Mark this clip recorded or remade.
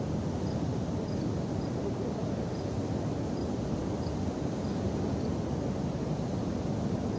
recorded